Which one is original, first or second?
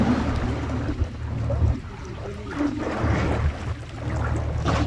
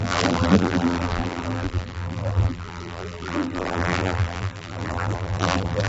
first